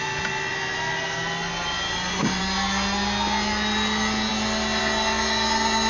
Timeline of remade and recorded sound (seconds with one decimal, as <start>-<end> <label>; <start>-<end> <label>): 0.0-5.9 recorded